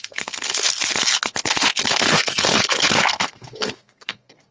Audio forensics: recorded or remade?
remade